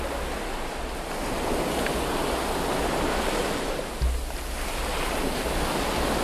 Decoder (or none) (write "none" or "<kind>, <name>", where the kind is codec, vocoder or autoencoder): none